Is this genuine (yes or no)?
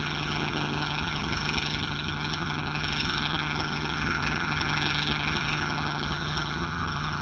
no